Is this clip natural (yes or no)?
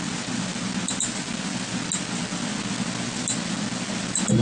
yes